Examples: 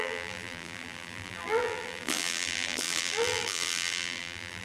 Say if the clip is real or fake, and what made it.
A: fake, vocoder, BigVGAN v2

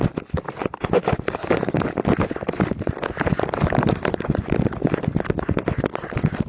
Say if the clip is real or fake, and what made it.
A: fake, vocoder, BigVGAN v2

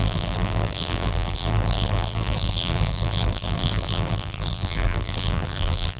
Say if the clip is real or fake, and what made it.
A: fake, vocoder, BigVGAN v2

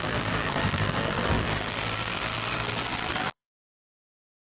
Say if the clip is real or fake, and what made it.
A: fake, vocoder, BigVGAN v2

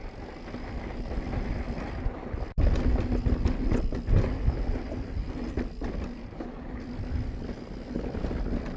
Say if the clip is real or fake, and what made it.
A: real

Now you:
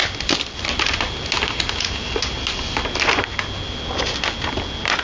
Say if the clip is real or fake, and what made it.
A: real